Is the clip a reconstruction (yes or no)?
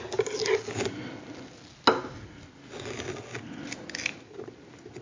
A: no